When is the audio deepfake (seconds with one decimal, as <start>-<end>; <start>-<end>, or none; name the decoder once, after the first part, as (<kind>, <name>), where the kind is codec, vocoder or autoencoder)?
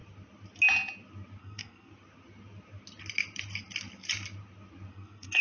1.4-1.9 (codec, SNAC); 4.9-5.4